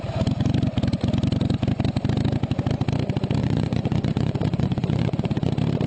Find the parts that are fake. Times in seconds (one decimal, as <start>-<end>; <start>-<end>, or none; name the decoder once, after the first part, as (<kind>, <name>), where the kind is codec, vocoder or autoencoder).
3.4-5.5 (vocoder, Vocos)